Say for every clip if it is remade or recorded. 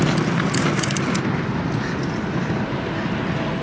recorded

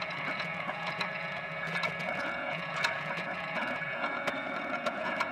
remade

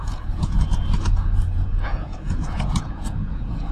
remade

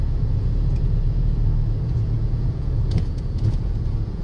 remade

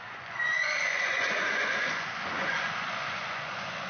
remade